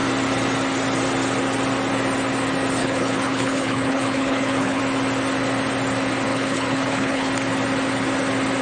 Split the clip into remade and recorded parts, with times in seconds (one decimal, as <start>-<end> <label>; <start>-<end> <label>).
0.0-2.8 recorded; 2.8-4.8 remade; 4.8-6.3 recorded; 6.3-7.3 remade; 7.3-8.6 recorded